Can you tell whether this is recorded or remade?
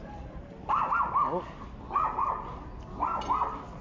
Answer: recorded